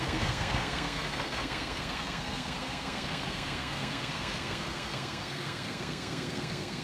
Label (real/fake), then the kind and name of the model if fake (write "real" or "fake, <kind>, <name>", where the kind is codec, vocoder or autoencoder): fake, codec, SNAC